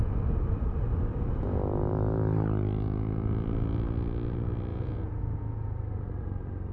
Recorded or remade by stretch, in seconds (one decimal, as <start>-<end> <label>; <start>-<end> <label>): 0.0-4.7 recorded; 4.7-5.8 remade; 5.8-6.7 recorded